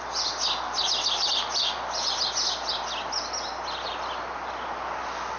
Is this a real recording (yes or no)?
yes